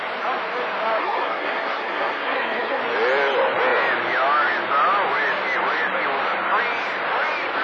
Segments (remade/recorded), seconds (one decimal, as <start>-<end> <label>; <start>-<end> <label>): 0.0-1.0 recorded; 1.0-2.8 remade; 2.8-7.6 recorded